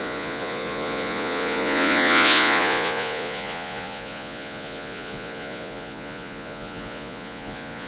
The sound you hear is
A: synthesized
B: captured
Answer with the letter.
A